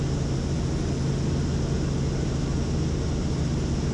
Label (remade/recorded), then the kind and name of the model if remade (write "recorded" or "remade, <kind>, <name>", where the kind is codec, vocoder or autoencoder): recorded